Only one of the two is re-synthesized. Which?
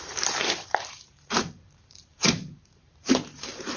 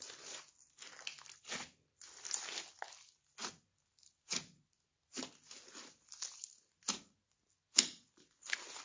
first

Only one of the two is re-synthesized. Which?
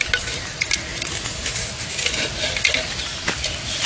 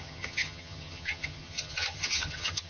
second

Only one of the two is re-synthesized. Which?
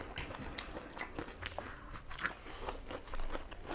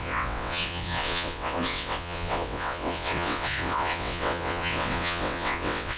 second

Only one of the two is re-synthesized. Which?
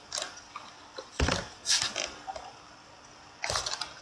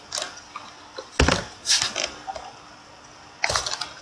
first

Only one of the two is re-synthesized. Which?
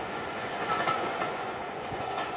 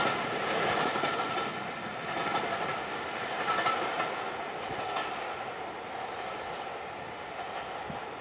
first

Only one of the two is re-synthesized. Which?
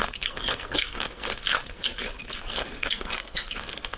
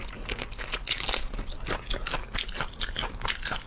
first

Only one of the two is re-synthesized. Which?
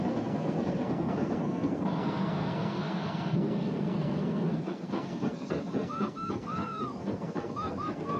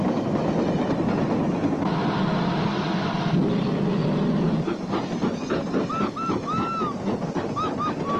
first